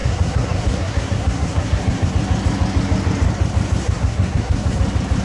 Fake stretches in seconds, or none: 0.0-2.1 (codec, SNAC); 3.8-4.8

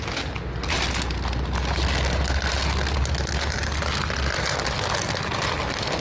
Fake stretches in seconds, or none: none